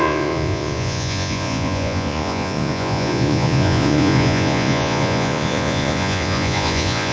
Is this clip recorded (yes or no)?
no